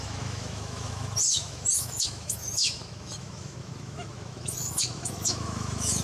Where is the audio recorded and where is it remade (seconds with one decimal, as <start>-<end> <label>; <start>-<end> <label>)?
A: 0.0-6.0 remade

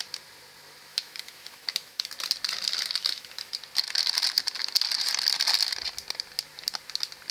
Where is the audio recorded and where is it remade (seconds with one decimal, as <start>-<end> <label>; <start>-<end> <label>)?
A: 0.0-0.9 recorded; 0.9-2.1 remade; 2.1-3.0 recorded; 3.0-3.5 remade; 3.5-7.3 recorded

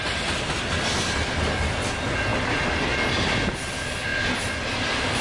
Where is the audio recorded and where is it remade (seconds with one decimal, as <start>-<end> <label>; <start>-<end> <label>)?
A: 0.0-5.2 recorded

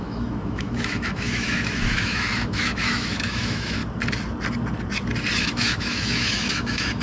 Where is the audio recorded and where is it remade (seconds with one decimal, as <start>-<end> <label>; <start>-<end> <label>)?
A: 0.0-3.8 remade; 3.8-5.4 recorded; 5.4-7.0 remade

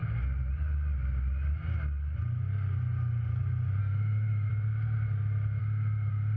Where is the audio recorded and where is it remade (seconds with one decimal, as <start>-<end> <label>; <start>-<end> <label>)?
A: 0.0-3.8 recorded; 3.8-4.5 remade; 4.5-5.6 recorded; 5.6-6.4 remade

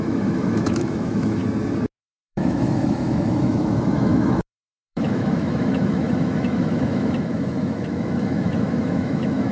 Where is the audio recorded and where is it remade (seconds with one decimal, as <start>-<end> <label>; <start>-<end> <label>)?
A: 0.0-1.4 remade; 1.4-2.0 recorded; 2.0-9.5 remade